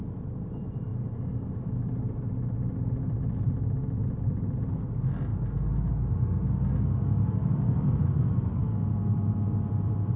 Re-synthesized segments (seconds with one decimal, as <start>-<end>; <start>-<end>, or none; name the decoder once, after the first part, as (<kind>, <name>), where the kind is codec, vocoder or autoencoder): 7.0-8.3 (codec, DAC)